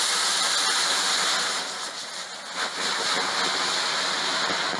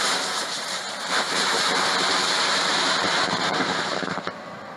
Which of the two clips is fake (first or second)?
second